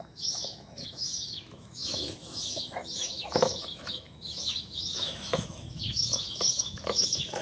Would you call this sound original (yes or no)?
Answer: no